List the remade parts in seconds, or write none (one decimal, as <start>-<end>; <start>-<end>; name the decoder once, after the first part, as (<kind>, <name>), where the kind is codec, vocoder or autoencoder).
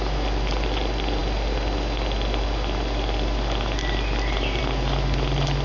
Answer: none